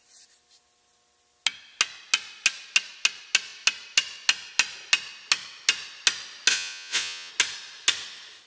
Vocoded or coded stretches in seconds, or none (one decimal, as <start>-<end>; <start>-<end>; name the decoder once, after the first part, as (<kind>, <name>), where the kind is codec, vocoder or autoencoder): 6.5-7.3 (vocoder, Vocos)